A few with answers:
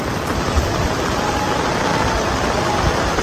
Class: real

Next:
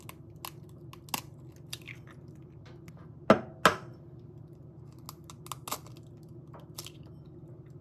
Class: real